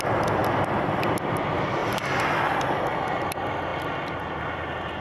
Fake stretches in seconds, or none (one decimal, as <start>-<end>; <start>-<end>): 0.4-1.4; 1.8-2.8